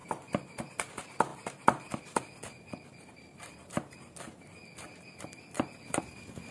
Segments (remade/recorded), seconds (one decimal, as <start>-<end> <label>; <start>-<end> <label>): 0.0-0.9 remade; 0.9-1.3 recorded; 1.3-5.2 remade; 5.2-6.5 recorded

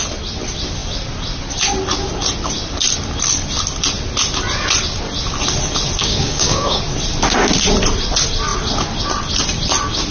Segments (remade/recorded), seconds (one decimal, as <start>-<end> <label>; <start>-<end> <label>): 0.0-6.0 recorded; 6.0-6.8 remade; 6.8-10.1 recorded

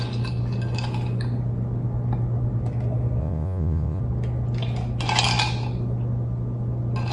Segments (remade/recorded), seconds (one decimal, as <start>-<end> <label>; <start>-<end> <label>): 0.0-3.2 recorded; 3.2-4.0 remade; 4.0-7.1 recorded

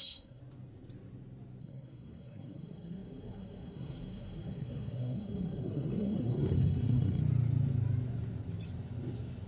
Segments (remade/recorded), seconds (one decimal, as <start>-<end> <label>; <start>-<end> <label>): 0.0-0.4 remade; 0.4-1.6 recorded; 1.6-7.2 remade; 7.2-9.5 recorded

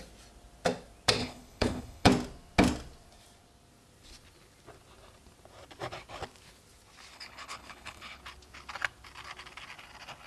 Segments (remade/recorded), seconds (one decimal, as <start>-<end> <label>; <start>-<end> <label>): 0.0-1.2 recorded; 1.2-2.1 remade; 2.1-7.1 recorded; 7.1-8.2 remade; 8.2-10.3 recorded

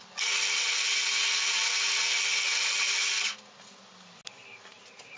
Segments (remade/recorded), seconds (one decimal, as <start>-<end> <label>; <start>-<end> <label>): 0.0-5.2 recorded